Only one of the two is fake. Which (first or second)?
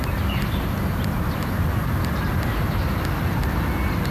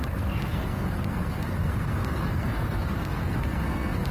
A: second